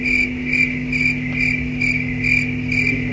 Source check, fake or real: real